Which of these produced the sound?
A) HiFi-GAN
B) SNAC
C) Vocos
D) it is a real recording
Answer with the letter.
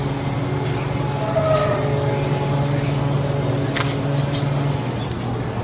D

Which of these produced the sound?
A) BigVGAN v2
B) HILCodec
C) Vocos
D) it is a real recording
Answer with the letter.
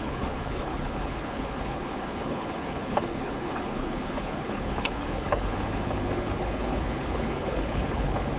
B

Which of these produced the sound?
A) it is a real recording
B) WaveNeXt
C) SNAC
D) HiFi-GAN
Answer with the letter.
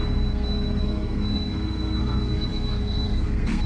C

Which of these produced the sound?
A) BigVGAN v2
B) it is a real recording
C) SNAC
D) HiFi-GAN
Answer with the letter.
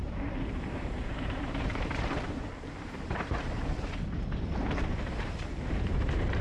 A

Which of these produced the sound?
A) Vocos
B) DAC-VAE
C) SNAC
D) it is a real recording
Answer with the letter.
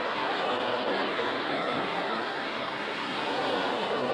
C